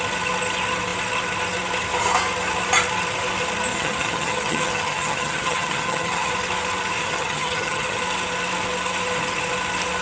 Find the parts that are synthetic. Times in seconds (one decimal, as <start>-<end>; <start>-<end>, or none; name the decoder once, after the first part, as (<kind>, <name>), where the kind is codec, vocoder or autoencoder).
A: 3.7-6.3 (vocoder, HiFi-GAN); 7.0-8.0